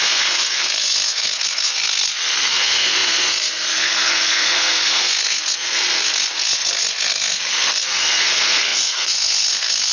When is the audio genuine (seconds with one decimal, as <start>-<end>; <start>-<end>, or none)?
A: none